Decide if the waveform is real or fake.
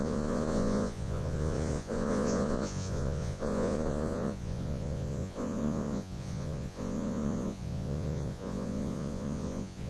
fake